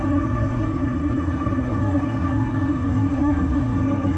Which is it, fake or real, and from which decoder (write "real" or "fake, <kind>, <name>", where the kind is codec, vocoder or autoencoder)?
fake, codec, SNAC